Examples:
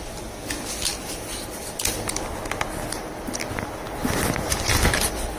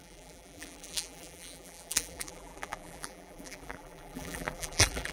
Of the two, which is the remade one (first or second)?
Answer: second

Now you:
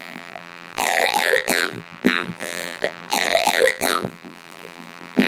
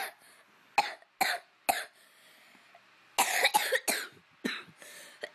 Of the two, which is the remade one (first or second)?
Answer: first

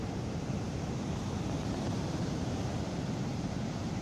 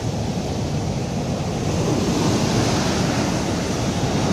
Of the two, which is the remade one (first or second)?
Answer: first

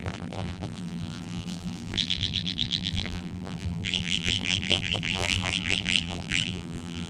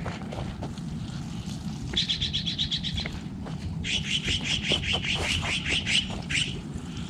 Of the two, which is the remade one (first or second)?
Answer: first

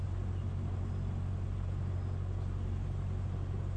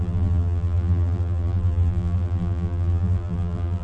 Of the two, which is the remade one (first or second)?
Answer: second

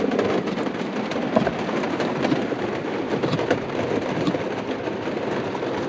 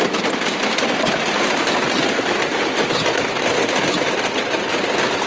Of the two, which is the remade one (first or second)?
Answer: first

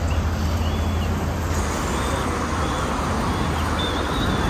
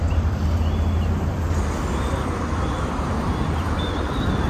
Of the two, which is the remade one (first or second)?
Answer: second